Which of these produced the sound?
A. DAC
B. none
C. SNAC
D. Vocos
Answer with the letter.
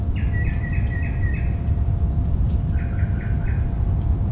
B